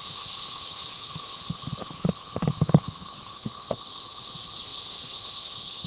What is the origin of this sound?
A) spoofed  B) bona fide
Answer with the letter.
A